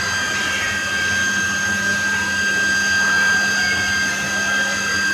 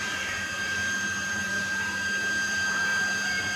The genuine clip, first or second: first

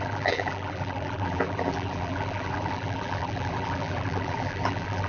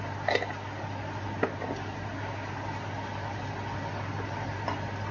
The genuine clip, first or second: second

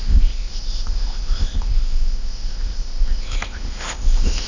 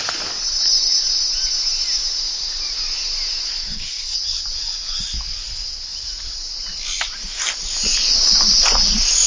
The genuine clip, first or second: second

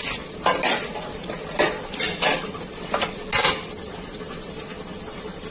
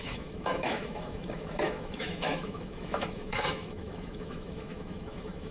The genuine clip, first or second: first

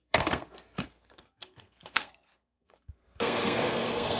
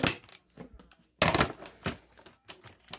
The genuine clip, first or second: second